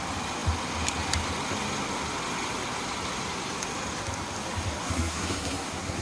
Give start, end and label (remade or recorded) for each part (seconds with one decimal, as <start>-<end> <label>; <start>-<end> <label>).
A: 0.0-4.8 recorded; 4.8-6.0 remade